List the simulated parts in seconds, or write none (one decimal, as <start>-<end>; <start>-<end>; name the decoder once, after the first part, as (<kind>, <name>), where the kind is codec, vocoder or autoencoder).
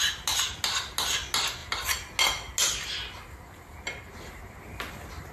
none